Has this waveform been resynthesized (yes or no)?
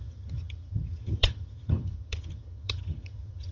yes